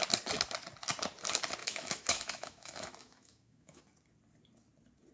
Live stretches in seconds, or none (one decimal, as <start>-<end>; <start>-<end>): 0.0-1.6; 3.8-5.1